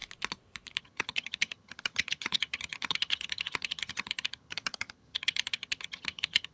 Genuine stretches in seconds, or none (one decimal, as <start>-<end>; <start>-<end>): 0.0-0.8